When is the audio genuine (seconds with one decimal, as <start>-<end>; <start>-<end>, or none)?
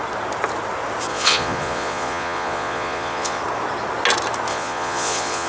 0.0-1.1; 3.4-4.5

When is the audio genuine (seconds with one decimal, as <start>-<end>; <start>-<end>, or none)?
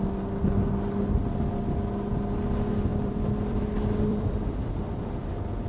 0.0-2.9; 3.6-4.1; 4.6-5.7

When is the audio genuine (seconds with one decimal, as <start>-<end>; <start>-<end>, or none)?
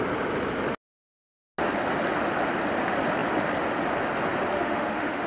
0.0-4.5